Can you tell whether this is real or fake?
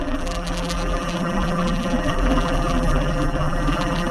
fake